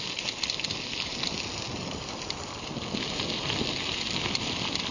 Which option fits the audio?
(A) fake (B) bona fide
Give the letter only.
B